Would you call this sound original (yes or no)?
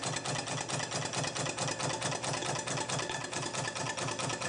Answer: yes